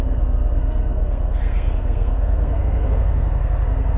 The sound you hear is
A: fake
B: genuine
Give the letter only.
A